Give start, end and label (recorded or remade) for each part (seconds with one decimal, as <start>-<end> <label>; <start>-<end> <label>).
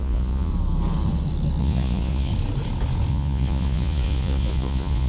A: 0.0-0.5 remade; 0.5-1.6 recorded; 1.6-2.3 remade; 2.3-3.1 recorded; 3.1-5.1 remade